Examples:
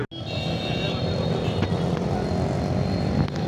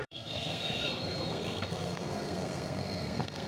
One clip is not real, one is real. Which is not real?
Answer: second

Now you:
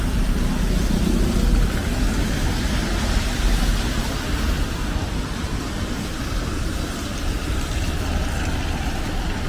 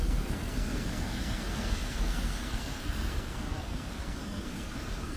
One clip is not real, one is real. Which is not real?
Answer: second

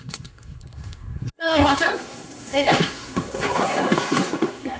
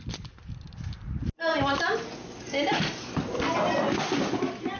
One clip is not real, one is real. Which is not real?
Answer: first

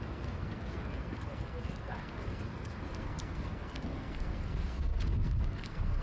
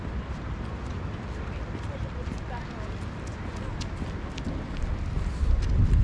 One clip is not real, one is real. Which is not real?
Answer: first